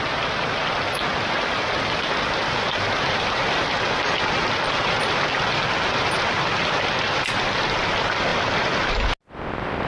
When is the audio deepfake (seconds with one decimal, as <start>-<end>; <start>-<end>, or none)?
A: none